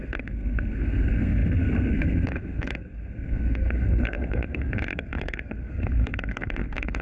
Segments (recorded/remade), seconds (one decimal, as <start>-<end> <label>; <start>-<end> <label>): 0.0-7.0 remade